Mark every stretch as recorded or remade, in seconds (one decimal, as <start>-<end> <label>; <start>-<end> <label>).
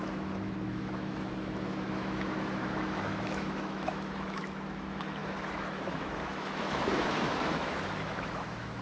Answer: 0.0-8.8 remade